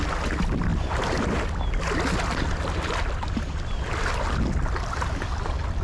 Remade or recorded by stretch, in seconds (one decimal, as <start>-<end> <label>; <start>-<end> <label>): 0.0-5.8 recorded